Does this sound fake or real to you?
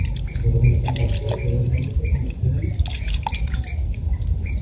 real